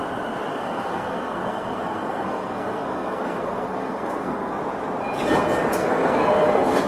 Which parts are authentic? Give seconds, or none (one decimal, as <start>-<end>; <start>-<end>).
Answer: 0.0-0.5; 4.6-5.8